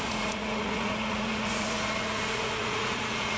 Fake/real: fake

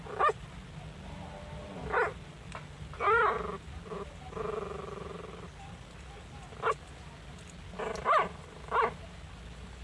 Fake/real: fake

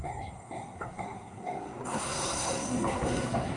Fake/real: fake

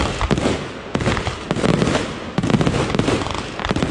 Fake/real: real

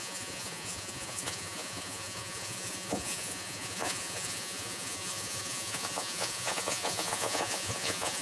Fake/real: fake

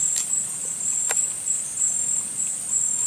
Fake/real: real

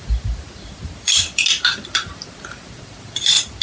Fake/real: fake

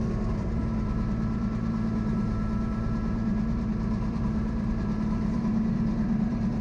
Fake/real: fake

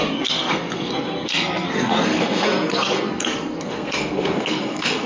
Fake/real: fake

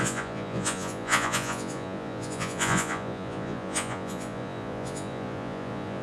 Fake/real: fake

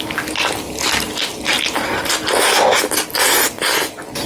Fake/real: real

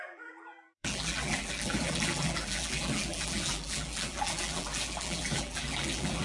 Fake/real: fake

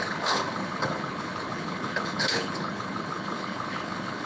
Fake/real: fake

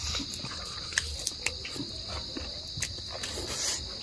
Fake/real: real